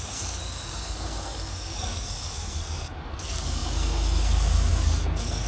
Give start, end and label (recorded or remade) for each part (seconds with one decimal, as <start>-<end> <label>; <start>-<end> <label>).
0.0-5.5 remade